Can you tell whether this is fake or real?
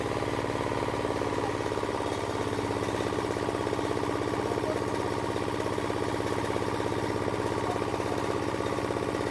real